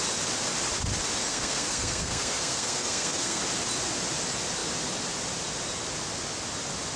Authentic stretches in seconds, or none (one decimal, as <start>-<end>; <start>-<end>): 0.0-1.3; 3.4-7.0